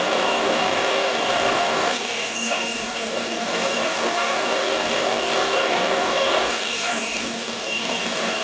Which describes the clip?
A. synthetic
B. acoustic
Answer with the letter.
A